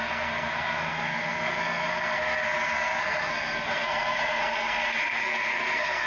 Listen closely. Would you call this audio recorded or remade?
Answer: remade